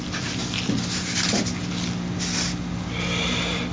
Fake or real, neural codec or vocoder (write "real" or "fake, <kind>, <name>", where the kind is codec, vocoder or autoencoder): real